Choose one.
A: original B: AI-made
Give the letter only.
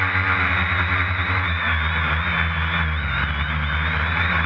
A